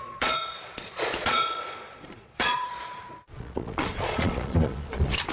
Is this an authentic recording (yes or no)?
no